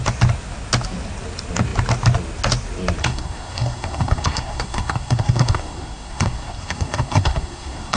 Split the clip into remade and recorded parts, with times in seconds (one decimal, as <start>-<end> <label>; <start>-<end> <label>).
0.0-3.0 recorded; 3.0-8.0 remade